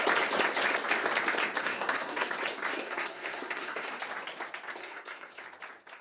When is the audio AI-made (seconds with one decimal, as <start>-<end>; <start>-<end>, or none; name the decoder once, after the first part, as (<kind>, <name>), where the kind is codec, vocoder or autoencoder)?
1.6-2.3 (codec, SNAC); 2.7-4.0; 4.8-5.4